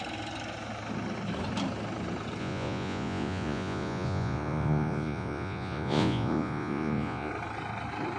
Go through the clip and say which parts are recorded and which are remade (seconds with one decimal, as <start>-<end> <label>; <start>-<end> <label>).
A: 0.0-2.4 recorded; 2.4-7.3 remade; 7.3-8.2 recorded